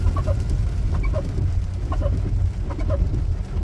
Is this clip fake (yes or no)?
no